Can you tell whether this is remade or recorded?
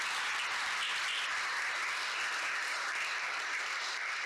recorded